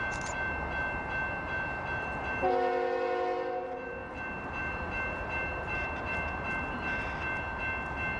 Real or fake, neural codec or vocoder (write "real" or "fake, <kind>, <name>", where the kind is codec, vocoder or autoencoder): real